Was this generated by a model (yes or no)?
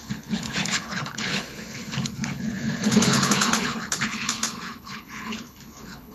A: yes